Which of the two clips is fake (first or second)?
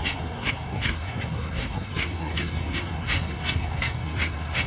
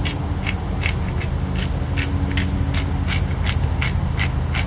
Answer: first